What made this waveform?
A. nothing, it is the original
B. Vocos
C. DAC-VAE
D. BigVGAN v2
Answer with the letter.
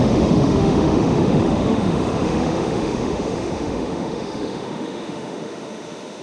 C